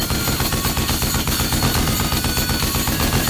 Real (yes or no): yes